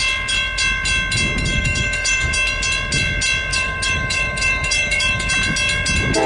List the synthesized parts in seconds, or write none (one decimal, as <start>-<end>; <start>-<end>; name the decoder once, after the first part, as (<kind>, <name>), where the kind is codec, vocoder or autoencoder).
1.5-2.3 (autoencoder, DAC-VAE); 3.5-5.3